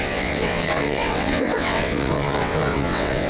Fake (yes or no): yes